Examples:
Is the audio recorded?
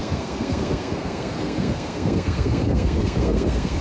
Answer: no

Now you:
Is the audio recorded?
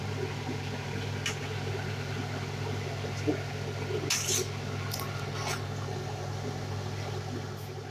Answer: yes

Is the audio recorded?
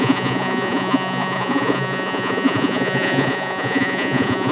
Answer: no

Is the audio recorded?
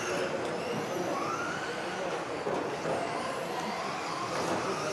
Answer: yes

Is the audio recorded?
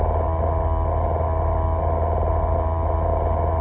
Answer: yes